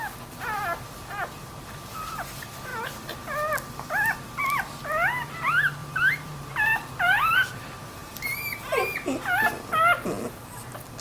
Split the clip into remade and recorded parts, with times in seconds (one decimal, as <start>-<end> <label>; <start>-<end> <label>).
0.0-5.8 recorded; 5.8-7.3 remade; 7.3-11.0 recorded

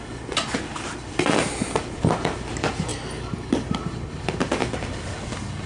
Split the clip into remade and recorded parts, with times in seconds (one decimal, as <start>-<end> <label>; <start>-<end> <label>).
0.0-5.7 recorded

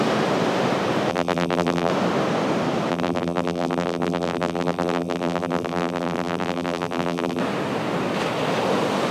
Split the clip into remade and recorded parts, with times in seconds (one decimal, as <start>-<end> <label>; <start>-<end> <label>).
0.0-1.1 recorded; 1.1-1.9 remade; 1.9-2.9 recorded; 2.9-7.4 remade; 7.4-9.1 recorded

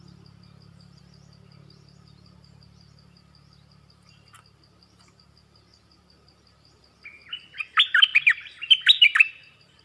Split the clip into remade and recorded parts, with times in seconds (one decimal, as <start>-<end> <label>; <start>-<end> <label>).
0.0-6.8 remade; 6.8-7.6 recorded; 7.6-9.8 remade

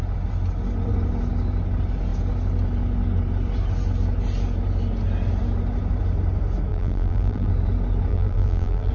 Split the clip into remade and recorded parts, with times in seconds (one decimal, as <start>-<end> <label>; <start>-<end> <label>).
0.0-6.7 recorded; 6.7-7.5 remade; 7.5-8.1 recorded; 8.1-8.9 remade

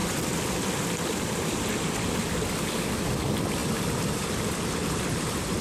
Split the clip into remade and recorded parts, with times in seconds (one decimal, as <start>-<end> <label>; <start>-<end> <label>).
0.0-5.6 remade

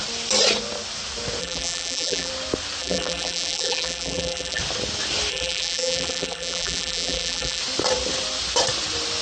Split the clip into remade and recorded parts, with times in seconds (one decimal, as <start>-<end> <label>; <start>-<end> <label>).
0.0-1.4 recorded; 1.4-2.3 remade; 2.3-2.8 recorded; 2.8-4.6 remade; 4.6-5.3 recorded; 5.3-7.6 remade; 7.6-9.2 recorded

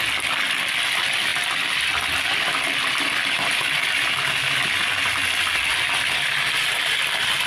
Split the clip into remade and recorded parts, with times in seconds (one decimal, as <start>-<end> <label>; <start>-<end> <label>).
0.0-7.5 recorded